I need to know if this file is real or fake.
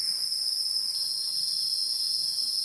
real